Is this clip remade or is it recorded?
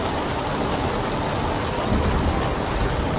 recorded